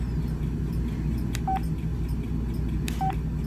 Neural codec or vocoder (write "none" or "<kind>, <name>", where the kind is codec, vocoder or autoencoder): none